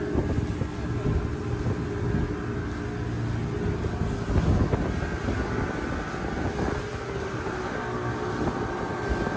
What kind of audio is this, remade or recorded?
recorded